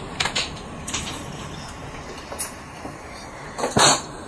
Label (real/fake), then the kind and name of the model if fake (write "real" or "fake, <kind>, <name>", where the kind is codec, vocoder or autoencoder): fake, vocoder, BigVGAN v2